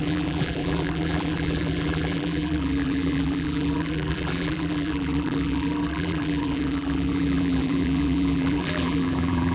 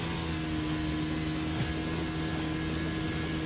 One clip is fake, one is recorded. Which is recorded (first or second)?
second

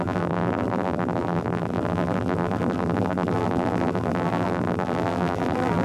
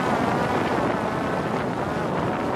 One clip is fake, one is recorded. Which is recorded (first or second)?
second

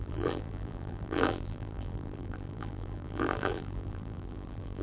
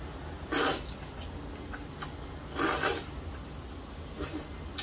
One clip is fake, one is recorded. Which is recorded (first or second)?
second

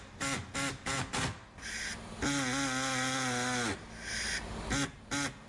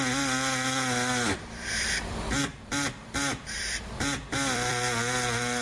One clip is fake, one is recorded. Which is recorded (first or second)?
first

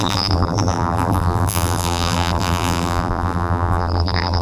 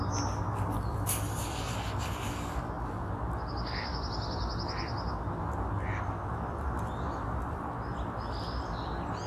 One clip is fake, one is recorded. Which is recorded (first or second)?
second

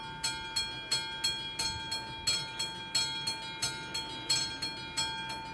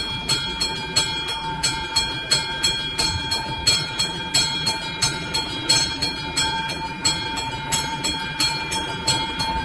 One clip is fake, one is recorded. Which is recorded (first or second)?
first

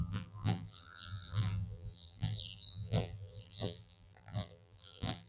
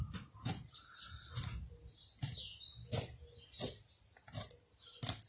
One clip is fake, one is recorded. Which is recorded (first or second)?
second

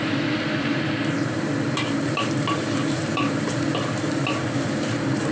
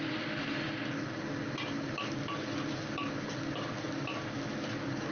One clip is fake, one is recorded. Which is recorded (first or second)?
second